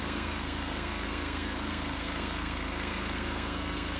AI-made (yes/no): yes